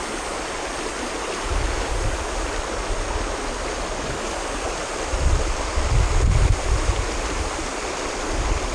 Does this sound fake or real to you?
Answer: real